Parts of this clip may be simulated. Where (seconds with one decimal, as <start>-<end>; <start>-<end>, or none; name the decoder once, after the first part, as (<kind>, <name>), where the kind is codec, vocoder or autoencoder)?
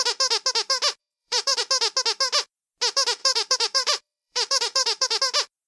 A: 1.0-1.6 (vocoder, BigVGAN v2); 3.2-5.2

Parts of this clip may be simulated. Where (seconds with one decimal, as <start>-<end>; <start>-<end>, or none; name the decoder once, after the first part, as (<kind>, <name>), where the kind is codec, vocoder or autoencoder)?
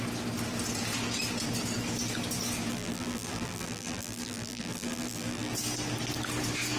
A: 2.7-5.5 (vocoder, BigVGAN v2)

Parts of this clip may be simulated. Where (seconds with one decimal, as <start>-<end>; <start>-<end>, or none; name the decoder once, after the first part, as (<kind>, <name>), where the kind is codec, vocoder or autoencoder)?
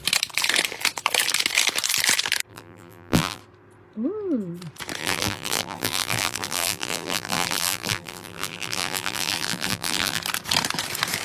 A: 2.5-3.4 (vocoder, BigVGAN v2); 5.0-10.2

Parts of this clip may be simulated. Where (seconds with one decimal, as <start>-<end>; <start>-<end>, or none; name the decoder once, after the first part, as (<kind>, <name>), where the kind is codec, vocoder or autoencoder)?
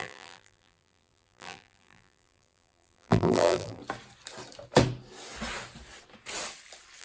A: 0.0-3.8 (vocoder, BigVGAN v2)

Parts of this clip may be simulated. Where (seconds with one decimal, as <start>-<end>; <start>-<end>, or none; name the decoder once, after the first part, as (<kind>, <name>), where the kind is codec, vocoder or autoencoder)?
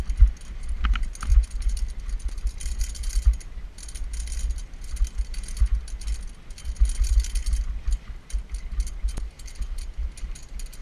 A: 1.3-2.8 (vocoder, BigVGAN v2)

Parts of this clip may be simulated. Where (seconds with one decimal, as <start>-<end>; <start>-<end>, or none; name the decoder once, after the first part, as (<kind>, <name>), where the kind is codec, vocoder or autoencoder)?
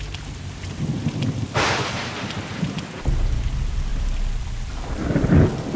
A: none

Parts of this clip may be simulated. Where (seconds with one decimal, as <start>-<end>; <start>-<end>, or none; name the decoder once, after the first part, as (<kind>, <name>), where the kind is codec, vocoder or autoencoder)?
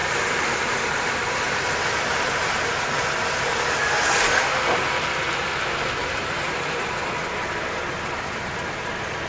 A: 0.0-2.5 (vocoder, BigVGAN v2); 6.0-7.1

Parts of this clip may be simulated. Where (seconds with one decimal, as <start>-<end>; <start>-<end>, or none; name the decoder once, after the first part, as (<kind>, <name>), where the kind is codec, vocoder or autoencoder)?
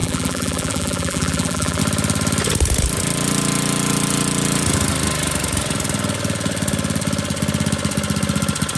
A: 0.0-1.8 (vocoder, BigVGAN v2)